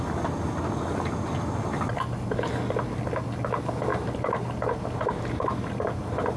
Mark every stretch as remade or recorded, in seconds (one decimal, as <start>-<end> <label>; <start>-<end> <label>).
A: 0.0-3.9 recorded; 3.9-5.1 remade; 5.1-6.4 recorded